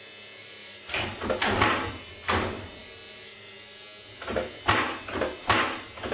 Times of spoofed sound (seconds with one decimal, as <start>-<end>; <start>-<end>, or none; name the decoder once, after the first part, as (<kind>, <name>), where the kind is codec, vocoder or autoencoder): 0.4-1.1 (vocoder, BigVGAN v2)